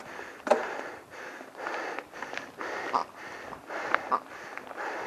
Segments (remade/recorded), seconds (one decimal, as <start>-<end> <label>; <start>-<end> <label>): 0.0-5.1 recorded